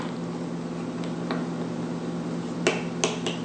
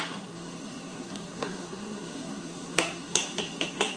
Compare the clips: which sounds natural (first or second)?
first